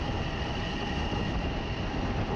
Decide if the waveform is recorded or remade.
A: recorded